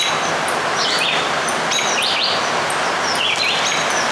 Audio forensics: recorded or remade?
recorded